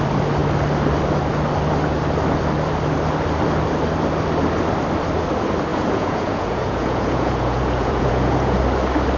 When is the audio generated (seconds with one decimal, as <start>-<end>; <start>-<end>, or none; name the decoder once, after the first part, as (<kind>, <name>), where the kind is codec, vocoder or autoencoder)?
5.7-8.6 (vocoder, Vocos)